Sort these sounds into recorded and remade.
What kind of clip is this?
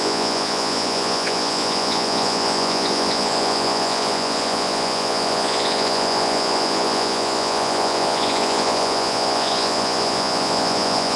remade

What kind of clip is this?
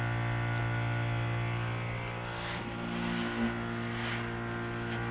recorded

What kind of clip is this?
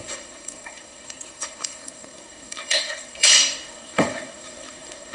remade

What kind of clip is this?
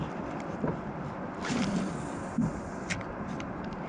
remade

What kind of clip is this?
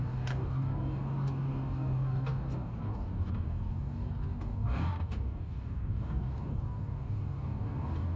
remade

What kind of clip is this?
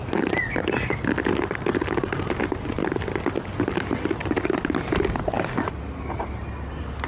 recorded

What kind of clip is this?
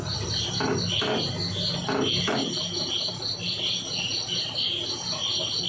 recorded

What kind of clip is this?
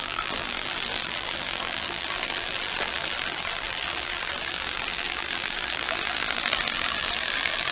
remade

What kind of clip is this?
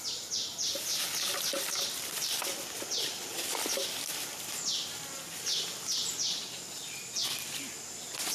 remade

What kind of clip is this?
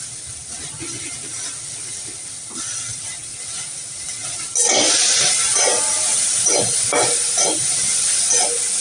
recorded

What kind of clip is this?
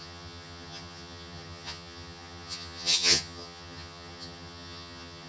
remade